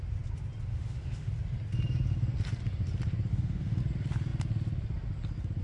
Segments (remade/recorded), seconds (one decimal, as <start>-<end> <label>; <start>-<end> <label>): 0.0-0.7 recorded; 0.7-1.3 remade; 1.3-3.3 recorded; 3.3-3.8 remade; 3.8-5.6 recorded